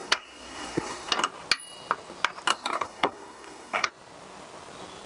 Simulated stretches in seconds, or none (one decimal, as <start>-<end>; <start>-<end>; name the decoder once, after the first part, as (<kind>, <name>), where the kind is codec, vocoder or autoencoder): 0.0-1.1 (codec, SNAC); 2.5-3.9